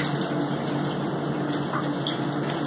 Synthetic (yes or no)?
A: no